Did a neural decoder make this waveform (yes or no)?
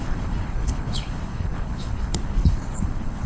yes